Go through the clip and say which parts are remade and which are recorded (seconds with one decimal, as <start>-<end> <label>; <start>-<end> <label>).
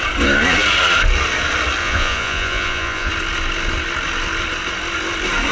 0.0-1.8 recorded; 1.8-3.1 remade; 3.1-5.5 recorded